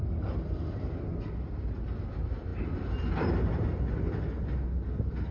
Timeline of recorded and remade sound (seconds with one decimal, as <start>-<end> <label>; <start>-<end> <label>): 0.0-5.3 recorded